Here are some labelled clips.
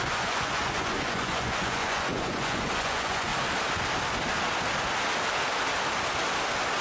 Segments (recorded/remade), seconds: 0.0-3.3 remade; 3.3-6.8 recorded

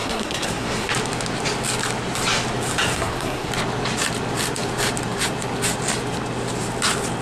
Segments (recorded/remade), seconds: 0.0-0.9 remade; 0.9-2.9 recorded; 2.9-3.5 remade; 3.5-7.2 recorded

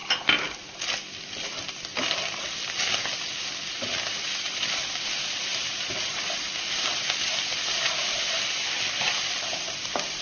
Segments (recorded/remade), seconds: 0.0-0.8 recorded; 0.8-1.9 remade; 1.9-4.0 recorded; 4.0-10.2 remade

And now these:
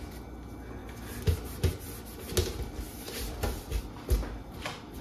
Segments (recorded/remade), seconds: 0.0-5.0 recorded